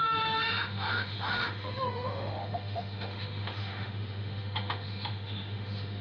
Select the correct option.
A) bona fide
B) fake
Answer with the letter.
B